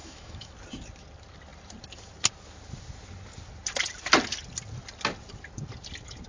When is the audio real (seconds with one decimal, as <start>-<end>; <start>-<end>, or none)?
0.5-6.3